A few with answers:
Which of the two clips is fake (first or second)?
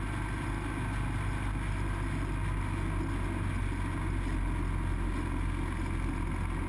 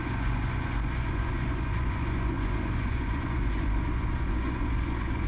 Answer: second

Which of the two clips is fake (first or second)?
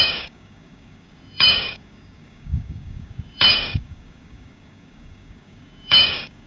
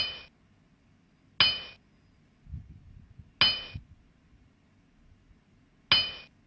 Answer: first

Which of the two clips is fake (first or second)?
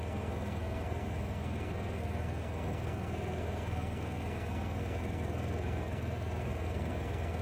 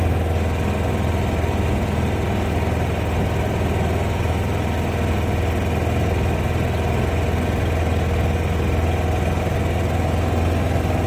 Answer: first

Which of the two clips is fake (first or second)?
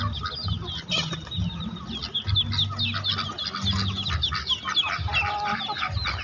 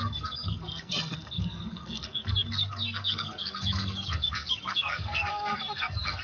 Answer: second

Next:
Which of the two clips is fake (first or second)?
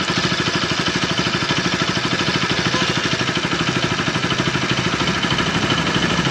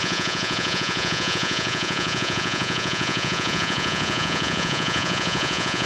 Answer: second